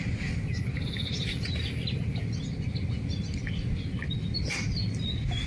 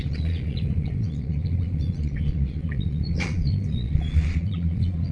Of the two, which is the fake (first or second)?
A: second